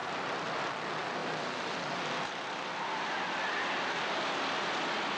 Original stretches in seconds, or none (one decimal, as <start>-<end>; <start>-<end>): 0.0-5.2